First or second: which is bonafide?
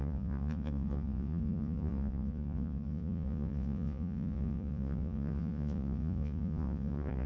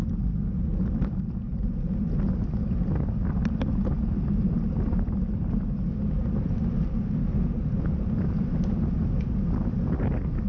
second